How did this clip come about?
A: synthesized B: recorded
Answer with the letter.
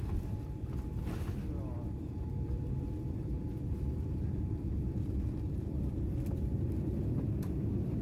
A